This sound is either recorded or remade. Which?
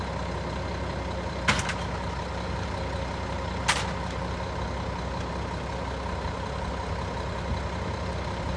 recorded